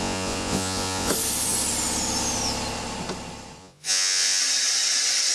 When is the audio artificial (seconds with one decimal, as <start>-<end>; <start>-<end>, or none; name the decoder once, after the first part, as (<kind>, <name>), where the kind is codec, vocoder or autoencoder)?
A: 0.0-1.1 (vocoder, Vocos); 3.6-4.4